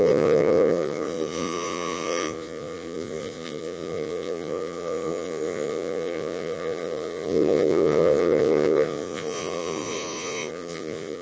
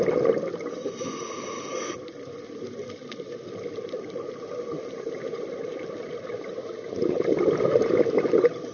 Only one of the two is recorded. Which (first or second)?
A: second